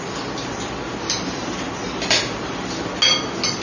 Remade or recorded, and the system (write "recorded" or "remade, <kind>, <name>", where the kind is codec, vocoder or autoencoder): recorded